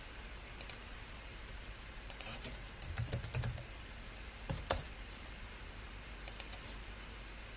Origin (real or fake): fake